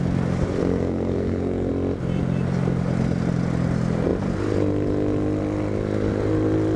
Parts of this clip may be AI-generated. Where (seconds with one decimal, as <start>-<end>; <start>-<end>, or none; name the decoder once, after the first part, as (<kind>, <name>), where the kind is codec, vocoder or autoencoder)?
0.6-1.7 (codec, SNAC)